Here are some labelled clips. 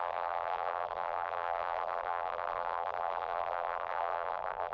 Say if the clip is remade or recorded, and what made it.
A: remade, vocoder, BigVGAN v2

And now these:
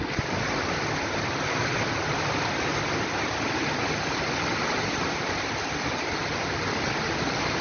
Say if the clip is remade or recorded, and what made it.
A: recorded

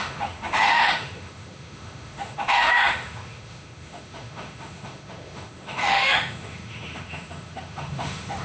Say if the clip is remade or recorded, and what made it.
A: remade, autoencoder, DAC-VAE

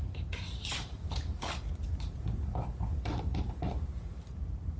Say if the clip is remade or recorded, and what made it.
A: remade, vocoder, BigVGAN v2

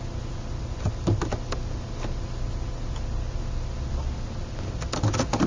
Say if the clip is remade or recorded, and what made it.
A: recorded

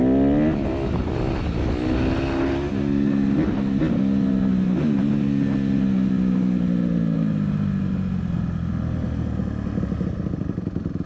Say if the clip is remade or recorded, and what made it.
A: recorded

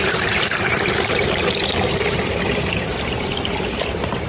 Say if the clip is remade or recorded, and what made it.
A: remade, vocoder, BigVGAN v2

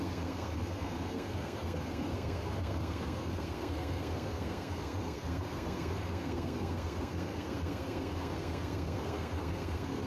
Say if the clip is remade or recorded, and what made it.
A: remade, codec, SNAC